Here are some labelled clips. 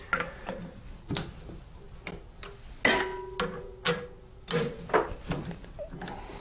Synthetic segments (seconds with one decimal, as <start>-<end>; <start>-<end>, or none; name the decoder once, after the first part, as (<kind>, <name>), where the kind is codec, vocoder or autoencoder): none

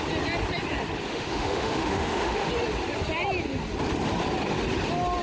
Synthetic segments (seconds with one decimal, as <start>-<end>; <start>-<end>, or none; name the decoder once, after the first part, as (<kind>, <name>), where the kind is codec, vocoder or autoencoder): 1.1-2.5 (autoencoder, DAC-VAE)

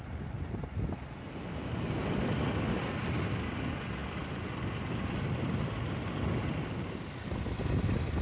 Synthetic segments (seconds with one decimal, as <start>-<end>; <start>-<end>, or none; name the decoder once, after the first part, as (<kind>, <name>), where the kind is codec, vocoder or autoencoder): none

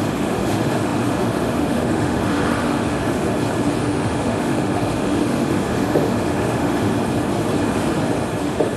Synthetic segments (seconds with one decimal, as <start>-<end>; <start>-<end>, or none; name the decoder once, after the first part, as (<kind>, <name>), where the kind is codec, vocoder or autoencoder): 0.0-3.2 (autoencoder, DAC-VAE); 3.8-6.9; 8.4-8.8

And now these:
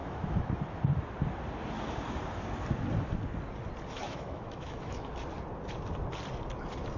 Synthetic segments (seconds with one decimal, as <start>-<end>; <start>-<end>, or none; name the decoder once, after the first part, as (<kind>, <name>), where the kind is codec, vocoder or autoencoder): 0.0-0.8 (autoencoder, DAC-VAE); 4.0-5.1